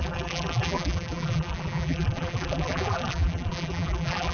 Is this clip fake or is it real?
fake